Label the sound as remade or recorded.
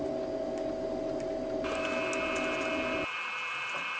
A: recorded